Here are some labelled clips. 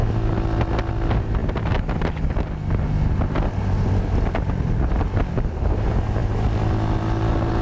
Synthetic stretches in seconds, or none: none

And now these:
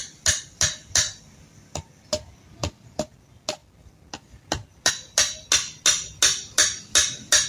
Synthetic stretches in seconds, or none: none